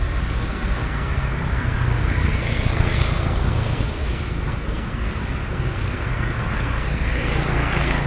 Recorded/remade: remade